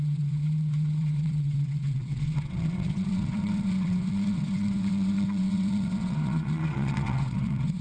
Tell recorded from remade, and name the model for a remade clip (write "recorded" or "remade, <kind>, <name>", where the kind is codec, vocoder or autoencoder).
remade, vocoder, WaveNeXt